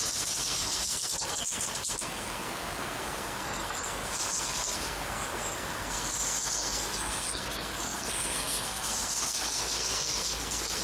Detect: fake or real fake